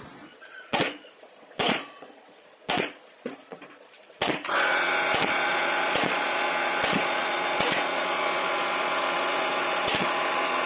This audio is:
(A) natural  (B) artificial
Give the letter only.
B